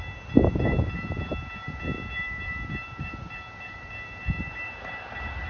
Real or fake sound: fake